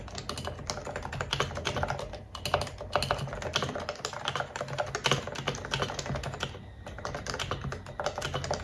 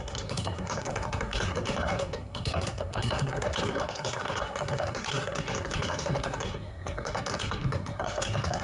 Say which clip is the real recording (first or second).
first